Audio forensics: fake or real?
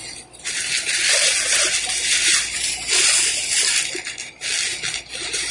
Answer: real